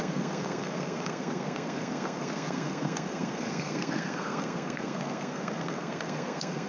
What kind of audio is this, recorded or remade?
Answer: remade